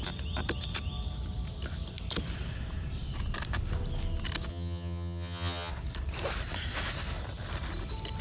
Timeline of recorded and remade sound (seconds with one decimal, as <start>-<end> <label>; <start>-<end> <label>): 0.0-4.5 recorded; 4.5-5.7 remade; 5.7-8.2 recorded